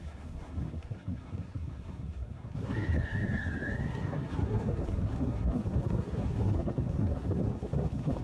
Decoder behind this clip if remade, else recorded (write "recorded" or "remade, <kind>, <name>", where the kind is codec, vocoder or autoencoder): remade, codec, SNAC